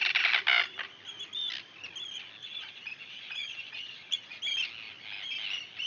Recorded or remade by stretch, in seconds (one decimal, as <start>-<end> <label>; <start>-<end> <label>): 0.0-2.4 recorded; 2.4-4.4 remade; 4.4-5.9 recorded